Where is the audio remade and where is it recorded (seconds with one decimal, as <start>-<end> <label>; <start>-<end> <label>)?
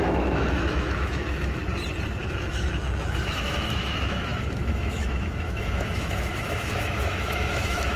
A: 0.0-1.6 remade; 1.6-2.2 recorded; 2.2-8.0 remade